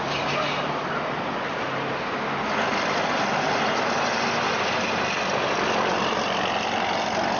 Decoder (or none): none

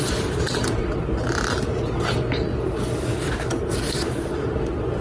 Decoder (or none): none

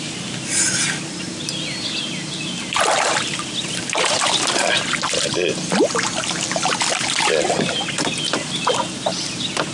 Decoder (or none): none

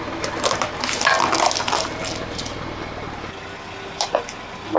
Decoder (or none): none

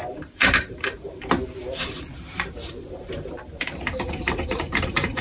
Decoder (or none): vocoder, BigVGAN v2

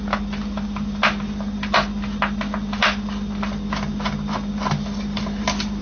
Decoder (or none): none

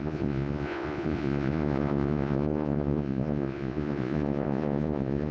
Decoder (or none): vocoder, Vocos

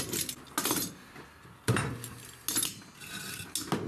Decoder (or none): none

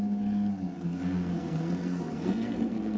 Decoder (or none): codec, SNAC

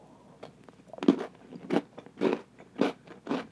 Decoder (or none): none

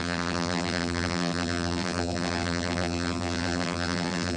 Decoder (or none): vocoder, BigVGAN v2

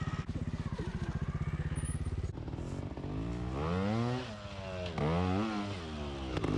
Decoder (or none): none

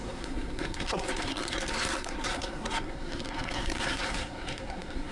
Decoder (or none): codec, SNAC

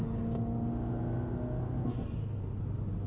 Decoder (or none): none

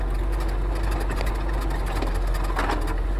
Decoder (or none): none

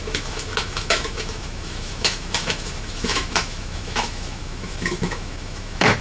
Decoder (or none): autoencoder, DAC-VAE